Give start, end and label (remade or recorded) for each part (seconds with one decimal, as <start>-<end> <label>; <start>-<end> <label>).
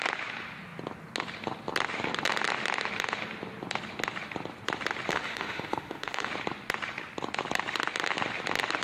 0.0-5.1 recorded; 5.1-6.3 remade; 6.3-8.8 recorded